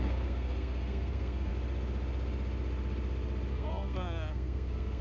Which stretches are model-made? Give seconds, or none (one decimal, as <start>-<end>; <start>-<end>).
0.0-1.5; 3.5-5.0